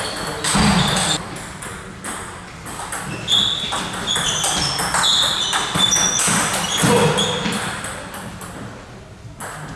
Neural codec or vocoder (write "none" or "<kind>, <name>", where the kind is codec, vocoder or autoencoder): none